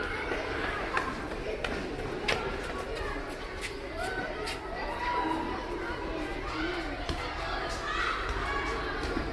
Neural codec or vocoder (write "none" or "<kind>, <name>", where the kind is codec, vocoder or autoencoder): none